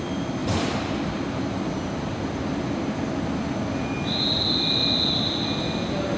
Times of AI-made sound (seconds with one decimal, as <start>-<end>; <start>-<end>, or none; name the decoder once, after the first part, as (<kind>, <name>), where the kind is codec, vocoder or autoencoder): 0.4-2.8 (vocoder, BigVGAN v2)